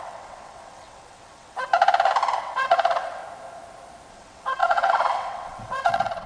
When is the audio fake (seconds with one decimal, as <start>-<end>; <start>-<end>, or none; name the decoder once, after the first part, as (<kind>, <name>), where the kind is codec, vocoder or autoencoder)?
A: 0.0-1.7 (vocoder, WaveNeXt); 2.4-3.2; 4.1-6.3